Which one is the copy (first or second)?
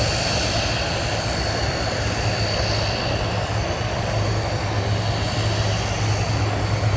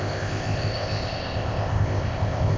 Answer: second